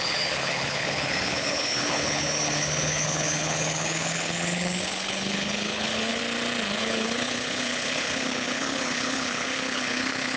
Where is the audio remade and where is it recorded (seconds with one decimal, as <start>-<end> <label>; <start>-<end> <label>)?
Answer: 0.0-6.2 remade; 6.2-6.8 recorded; 6.8-10.4 remade